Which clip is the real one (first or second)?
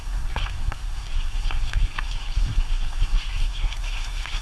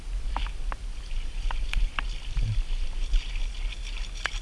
second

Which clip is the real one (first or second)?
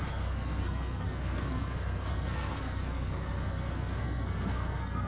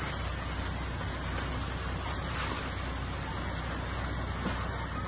second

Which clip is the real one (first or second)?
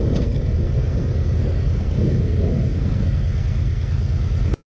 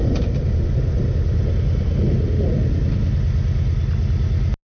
second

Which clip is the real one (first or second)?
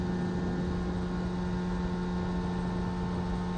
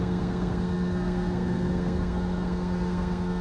first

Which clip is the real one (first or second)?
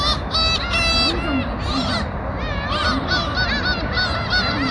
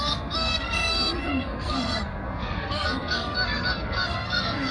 first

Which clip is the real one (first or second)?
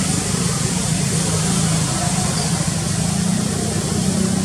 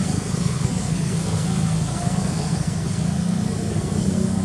first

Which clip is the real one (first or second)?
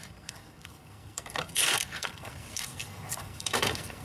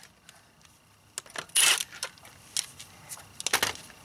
second